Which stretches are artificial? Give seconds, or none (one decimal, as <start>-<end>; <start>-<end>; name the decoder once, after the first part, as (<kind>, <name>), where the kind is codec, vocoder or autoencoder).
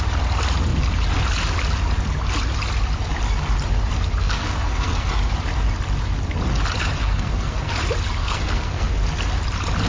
4.2-5.1 (codec, SNAC); 7.0-7.8; 8.2-8.9